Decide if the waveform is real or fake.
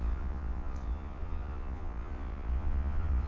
fake